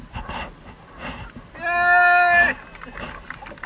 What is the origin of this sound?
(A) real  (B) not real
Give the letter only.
A